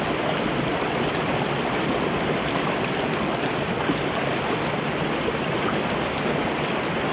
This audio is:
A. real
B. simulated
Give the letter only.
A